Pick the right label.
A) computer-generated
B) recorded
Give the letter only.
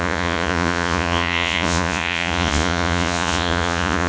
A